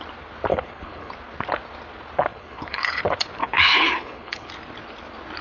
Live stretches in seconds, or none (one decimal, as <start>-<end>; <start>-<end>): 0.0-0.5; 1.1-2.3; 3.0-3.4; 4.5-5.4